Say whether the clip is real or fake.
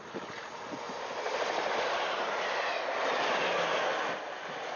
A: real